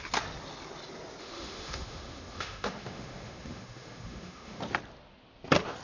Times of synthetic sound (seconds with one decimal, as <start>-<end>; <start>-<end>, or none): 1.2-4.6